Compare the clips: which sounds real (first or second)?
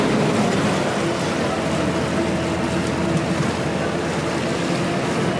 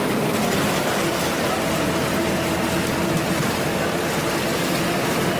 first